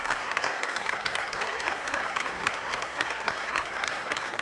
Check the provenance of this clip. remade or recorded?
remade